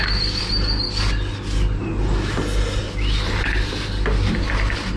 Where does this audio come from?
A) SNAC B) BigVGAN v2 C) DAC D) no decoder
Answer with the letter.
D